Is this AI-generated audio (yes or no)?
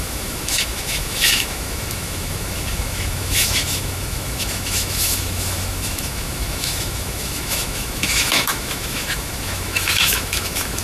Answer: yes